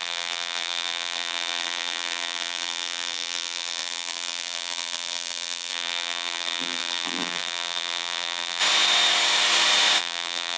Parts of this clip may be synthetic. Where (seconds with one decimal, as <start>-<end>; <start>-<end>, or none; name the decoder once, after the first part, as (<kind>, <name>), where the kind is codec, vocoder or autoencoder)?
0.0-8.6 (vocoder, BigVGAN v2); 10.0-10.6